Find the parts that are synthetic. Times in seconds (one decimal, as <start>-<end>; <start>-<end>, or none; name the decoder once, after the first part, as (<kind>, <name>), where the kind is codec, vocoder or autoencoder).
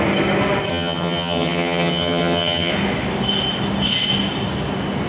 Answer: 0.7-2.7 (vocoder, HiFi-GAN)